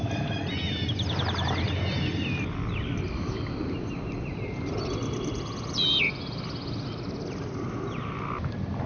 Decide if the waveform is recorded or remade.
recorded